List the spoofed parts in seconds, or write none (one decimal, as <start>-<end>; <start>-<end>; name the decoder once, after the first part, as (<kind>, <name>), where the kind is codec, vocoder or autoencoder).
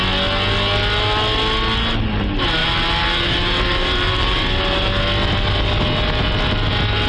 2.6-5.0 (vocoder, BigVGAN v2)